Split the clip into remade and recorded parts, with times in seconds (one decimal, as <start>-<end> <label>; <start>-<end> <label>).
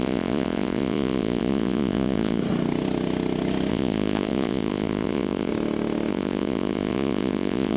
0.0-2.4 remade; 2.4-3.7 recorded; 3.7-5.5 remade; 5.5-6.1 recorded; 6.1-7.8 remade